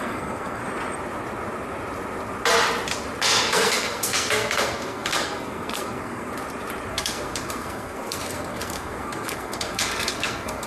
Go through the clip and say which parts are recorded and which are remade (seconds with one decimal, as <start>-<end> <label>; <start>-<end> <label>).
0.0-0.6 remade; 0.6-3.2 recorded; 3.2-6.3 remade; 6.3-6.9 recorded; 6.9-10.7 remade